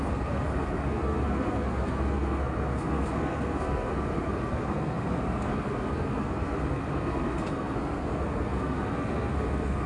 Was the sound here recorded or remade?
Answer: remade